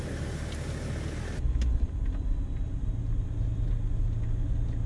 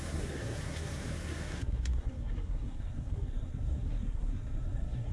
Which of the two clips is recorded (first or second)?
first